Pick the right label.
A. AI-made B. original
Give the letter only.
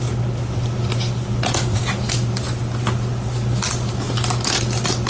B